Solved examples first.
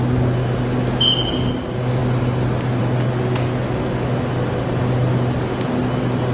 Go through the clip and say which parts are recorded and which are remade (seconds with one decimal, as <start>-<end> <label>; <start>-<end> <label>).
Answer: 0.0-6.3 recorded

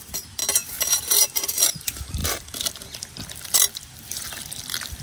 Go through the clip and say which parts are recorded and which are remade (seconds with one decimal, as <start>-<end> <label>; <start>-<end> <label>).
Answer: 0.0-0.4 remade; 0.4-1.7 recorded; 1.7-5.0 remade

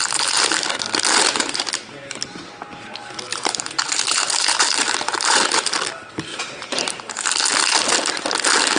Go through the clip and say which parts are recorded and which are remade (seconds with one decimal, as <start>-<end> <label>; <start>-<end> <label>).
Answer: 0.0-1.2 recorded; 1.2-2.2 remade; 2.2-3.3 recorded; 3.3-5.4 remade; 5.4-6.3 recorded; 6.3-7.1 remade; 7.1-8.8 recorded